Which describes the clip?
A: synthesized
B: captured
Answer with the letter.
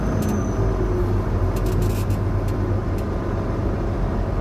B